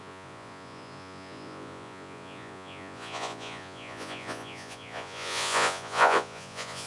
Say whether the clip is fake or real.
fake